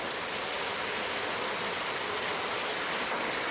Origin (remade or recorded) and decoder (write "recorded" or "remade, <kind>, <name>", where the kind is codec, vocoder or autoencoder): recorded